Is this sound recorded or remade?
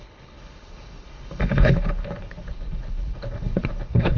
remade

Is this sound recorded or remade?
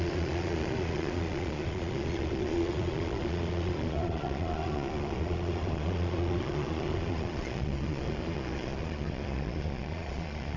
remade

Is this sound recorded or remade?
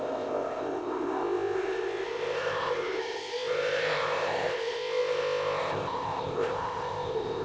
remade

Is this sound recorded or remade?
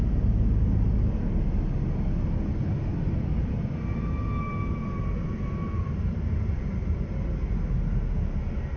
recorded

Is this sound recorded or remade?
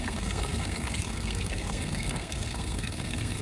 remade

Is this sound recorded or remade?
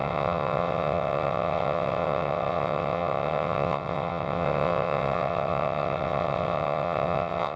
remade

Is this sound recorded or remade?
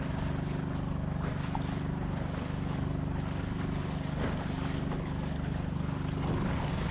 recorded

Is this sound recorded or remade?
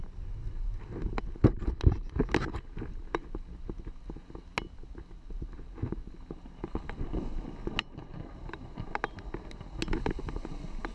recorded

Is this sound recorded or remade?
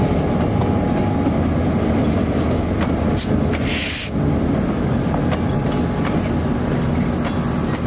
recorded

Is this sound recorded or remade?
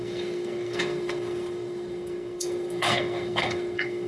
remade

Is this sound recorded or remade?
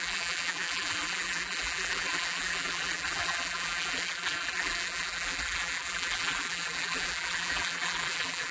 remade